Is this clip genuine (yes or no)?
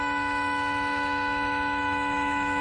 no